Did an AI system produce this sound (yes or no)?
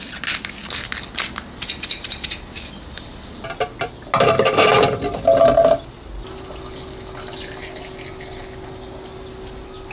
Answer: no